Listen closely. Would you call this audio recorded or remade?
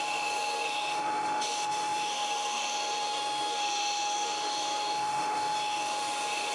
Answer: remade